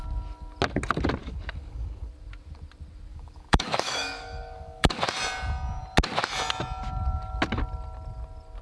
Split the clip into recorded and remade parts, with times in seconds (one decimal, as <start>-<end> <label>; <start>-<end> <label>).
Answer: 0.0-1.2 recorded; 1.2-2.1 remade; 2.1-3.1 recorded; 3.1-5.0 remade; 5.0-8.6 recorded